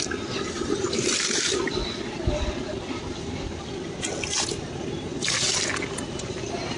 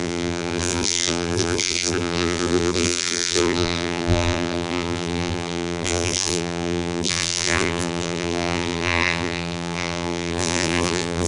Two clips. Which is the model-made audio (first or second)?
second